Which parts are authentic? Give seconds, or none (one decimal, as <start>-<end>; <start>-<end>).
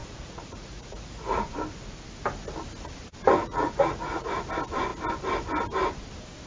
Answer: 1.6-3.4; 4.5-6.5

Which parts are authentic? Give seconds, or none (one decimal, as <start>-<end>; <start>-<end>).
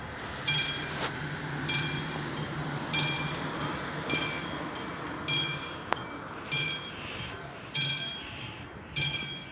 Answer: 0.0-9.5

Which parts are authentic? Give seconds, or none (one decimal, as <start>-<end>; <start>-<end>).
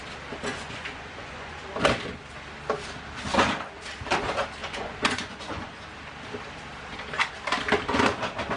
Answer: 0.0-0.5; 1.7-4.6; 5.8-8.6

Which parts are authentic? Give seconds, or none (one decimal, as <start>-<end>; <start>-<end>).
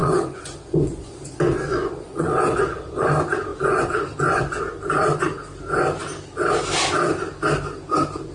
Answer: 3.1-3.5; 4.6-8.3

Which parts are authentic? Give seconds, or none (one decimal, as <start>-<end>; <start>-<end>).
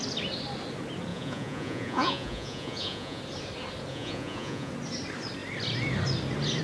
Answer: 0.0-1.1; 3.2-3.9; 4.7-6.6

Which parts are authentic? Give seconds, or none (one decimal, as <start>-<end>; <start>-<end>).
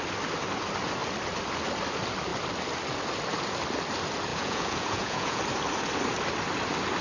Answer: 0.0-4.3; 5.4-7.0